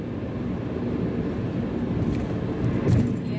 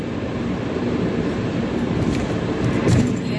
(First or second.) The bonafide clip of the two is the first